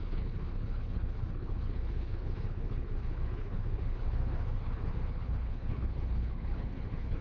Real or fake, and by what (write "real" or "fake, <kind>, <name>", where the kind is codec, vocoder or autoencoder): fake, codec, HILCodec